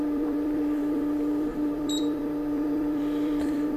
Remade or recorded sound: remade